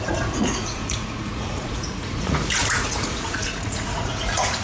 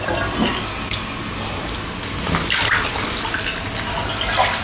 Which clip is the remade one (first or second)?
first